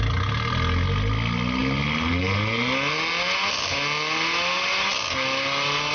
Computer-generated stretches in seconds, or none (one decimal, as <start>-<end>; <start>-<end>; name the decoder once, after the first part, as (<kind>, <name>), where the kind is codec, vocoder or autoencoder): none

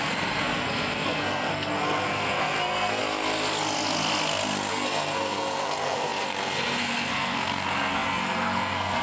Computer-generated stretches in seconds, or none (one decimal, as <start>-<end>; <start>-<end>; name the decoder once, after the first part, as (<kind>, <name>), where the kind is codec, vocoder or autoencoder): 0.0-3.0 (codec, SNAC); 4.7-9.0

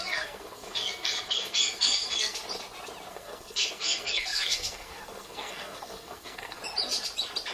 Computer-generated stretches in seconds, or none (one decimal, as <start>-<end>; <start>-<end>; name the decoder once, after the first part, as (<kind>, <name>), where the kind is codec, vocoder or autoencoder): 0.0-2.4 (codec, SNAC); 3.1-6.6

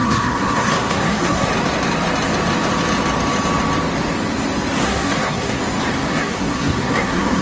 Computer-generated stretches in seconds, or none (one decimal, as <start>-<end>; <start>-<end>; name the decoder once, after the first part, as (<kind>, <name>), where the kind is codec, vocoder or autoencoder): 0.0-1.5 (codec, SNAC); 4.8-5.6; 6.1-7.4